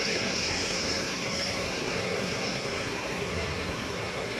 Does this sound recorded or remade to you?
remade